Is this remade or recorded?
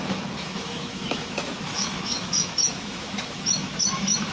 remade